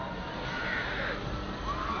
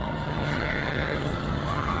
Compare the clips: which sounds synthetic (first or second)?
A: second